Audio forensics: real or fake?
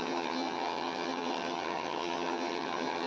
fake